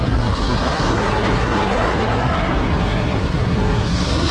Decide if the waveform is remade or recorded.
remade